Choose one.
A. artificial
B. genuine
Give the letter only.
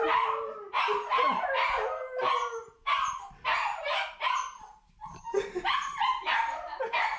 A